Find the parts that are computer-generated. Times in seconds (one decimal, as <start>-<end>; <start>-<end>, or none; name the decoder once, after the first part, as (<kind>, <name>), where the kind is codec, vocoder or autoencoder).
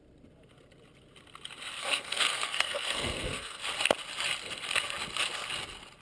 1.8-3.6 (codec, SNAC)